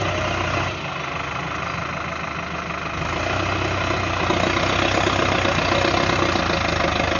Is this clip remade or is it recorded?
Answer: recorded